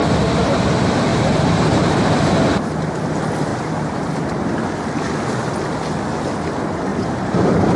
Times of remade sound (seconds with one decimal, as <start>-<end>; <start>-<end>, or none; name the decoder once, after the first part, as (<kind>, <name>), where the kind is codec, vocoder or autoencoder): 1.1-2.4 (vocoder, BigVGAN v2); 3.5-4.6; 6.9-7.8

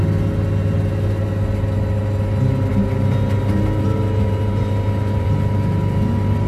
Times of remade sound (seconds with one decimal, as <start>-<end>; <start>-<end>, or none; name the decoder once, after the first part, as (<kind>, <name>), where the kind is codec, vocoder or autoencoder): none

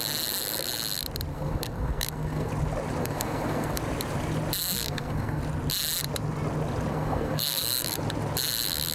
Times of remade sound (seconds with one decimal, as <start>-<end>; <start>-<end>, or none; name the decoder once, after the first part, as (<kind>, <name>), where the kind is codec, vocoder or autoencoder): 1.3-2.5 (codec, SNAC); 3.0-3.8; 4.6-5.4; 6.9-8.0

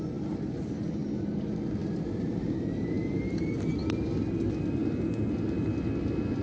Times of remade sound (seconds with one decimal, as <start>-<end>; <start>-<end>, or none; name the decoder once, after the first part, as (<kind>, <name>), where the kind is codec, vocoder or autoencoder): none

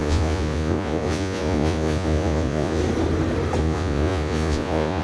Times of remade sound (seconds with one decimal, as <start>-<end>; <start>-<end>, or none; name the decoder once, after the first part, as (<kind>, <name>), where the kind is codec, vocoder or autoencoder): 0.0-2.8 (vocoder, Vocos); 3.6-5.0

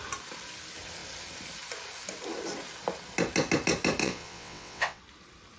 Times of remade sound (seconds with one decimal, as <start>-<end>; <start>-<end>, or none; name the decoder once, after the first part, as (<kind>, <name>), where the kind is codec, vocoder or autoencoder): 4.0-5.0 (vocoder, WaveNeXt)

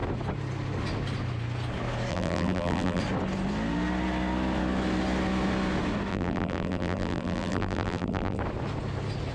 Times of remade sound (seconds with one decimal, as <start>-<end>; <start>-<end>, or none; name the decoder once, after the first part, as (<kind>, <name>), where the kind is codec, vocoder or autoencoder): 2.1-3.0 (vocoder, BigVGAN v2); 6.1-8.4

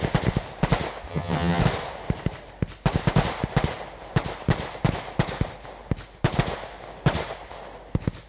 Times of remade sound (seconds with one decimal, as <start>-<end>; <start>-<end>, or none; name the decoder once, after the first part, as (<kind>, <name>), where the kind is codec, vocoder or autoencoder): 1.1-1.6 (vocoder, HiFi-GAN)